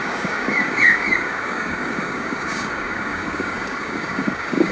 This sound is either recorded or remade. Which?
remade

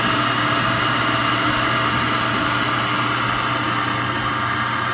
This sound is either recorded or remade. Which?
recorded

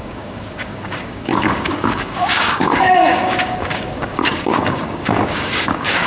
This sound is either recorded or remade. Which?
remade